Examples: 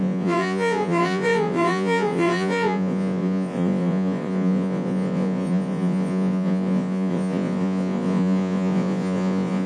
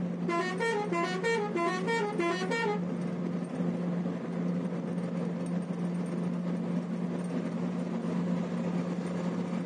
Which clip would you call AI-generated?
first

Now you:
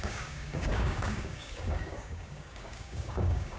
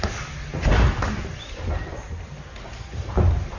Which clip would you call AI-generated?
first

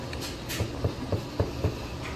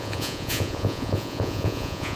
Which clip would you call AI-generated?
second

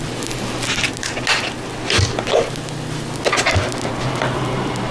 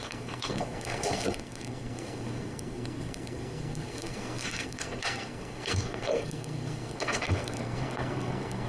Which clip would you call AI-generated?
second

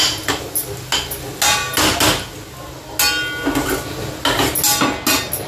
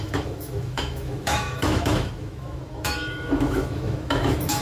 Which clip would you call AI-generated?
second